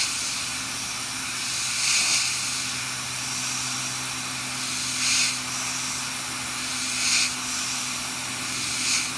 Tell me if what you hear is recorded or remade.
recorded